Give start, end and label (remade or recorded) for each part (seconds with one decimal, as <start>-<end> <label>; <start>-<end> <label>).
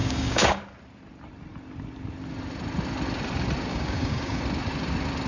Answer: 0.0-0.6 remade; 0.6-3.7 recorded; 3.7-4.4 remade; 4.4-5.3 recorded